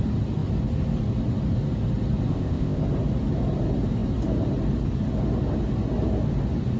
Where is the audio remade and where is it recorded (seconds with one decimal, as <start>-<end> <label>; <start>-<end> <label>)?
0.0-2.3 recorded; 2.3-2.8 remade; 2.8-6.8 recorded